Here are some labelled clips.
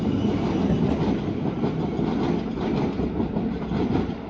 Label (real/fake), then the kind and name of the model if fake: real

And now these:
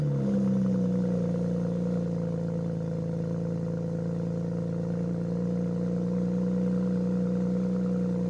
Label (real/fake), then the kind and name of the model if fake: real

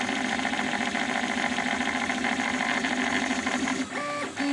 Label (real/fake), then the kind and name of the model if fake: real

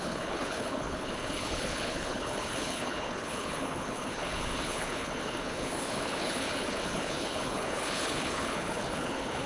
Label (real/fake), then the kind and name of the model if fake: fake, codec, HILCodec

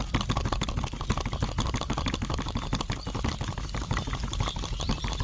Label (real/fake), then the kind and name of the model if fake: real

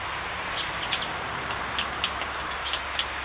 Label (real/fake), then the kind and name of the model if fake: real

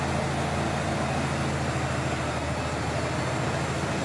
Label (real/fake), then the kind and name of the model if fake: real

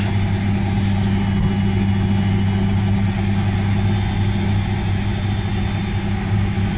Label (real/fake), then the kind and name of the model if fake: real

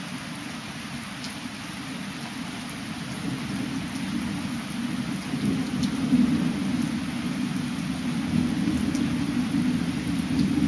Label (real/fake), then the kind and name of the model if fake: real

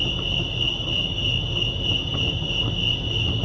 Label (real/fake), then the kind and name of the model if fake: real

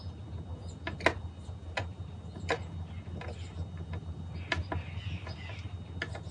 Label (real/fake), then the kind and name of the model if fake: real